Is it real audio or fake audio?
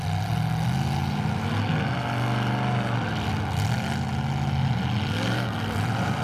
real